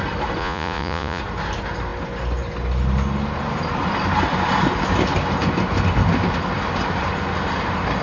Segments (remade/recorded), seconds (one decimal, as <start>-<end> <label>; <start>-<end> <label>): 0.0-0.4 recorded; 0.4-1.2 remade; 1.2-8.0 recorded